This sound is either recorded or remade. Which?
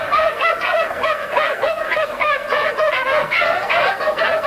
remade